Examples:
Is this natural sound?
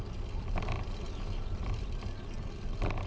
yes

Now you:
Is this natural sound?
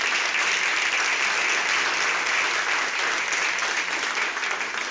yes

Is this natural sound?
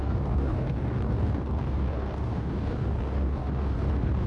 no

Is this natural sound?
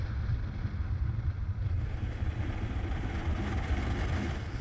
yes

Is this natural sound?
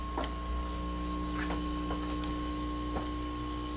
yes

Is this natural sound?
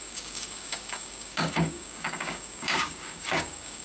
no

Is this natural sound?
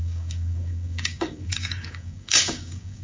no